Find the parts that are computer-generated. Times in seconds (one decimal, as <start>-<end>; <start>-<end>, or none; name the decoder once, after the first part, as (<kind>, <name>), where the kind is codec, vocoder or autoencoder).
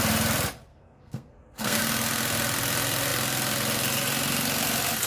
0.7-1.8 (codec, SNAC)